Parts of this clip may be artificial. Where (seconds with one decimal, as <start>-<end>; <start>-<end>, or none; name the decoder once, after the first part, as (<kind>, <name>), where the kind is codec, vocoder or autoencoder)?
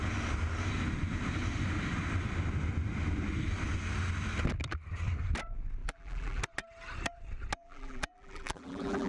5.8-6.4 (vocoder, BigVGAN v2); 7.6-9.1